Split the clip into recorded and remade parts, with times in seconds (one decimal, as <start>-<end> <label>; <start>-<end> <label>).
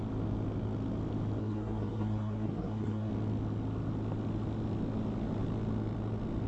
0.0-1.4 recorded; 1.4-3.1 remade; 3.1-6.5 recorded